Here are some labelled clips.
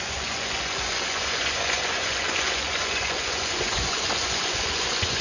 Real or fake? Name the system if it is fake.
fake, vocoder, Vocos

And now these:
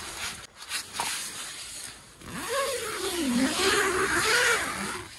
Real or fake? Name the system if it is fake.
real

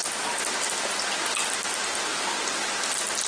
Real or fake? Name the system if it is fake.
real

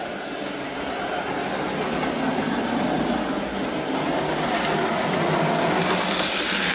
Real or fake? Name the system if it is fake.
real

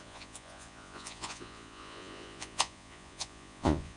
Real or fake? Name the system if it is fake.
fake, vocoder, Vocos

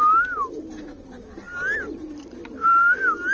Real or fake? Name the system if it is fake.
real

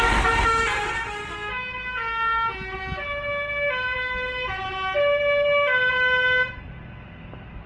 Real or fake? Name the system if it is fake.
real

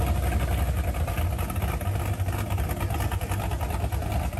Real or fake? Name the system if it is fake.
real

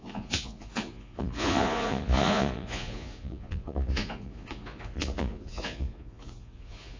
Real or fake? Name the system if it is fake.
fake, vocoder, Vocos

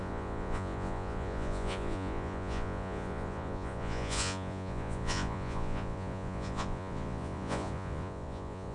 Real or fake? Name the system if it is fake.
fake, vocoder, Vocos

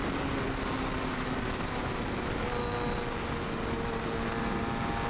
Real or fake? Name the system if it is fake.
real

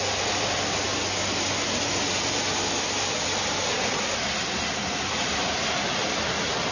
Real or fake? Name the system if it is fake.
real